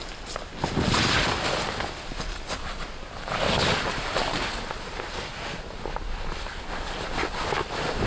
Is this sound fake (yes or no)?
no